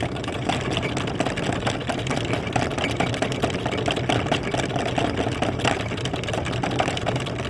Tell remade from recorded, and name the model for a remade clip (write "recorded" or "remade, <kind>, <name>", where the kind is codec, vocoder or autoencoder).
recorded